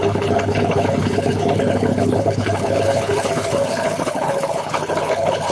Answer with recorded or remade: remade